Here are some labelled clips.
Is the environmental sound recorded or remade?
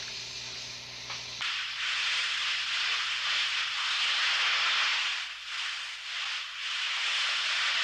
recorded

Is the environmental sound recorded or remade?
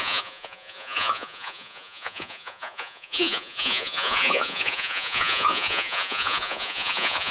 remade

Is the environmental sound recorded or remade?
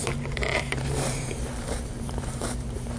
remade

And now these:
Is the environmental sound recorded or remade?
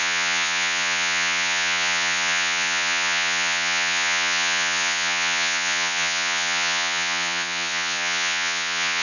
remade